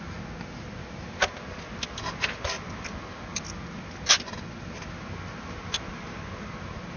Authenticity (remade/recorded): recorded